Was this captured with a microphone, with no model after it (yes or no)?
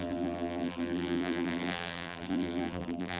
no